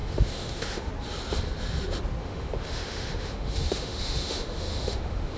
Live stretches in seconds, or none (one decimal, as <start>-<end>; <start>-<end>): 0.9-2.2